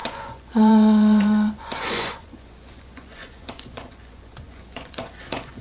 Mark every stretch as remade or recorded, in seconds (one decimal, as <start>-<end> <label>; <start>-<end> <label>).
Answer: 0.0-5.6 remade